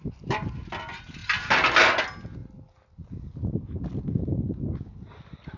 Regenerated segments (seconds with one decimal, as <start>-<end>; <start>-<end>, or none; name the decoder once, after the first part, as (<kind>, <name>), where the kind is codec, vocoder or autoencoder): none